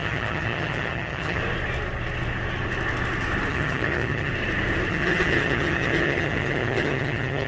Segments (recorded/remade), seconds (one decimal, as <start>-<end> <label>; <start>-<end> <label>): 0.0-1.4 remade; 1.4-3.5 recorded; 3.5-4.3 remade; 4.3-4.9 recorded; 4.9-7.5 remade